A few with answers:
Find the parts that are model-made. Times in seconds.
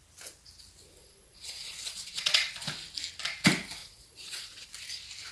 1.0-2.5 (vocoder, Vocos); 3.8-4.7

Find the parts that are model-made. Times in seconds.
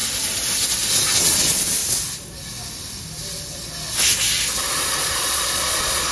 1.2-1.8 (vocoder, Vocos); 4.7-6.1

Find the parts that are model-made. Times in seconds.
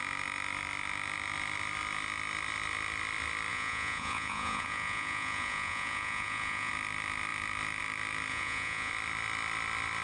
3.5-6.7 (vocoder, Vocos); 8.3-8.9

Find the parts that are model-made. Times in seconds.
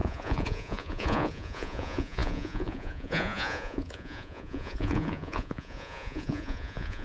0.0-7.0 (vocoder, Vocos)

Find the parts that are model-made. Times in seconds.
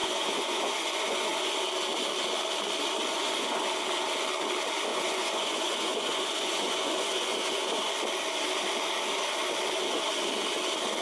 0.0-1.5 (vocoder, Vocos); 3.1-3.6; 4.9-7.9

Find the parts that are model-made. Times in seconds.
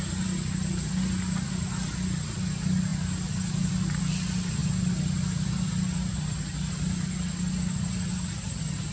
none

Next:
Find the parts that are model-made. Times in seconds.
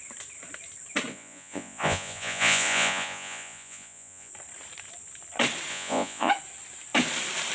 1.1-4.3 (vocoder, Vocos); 5.7-6.3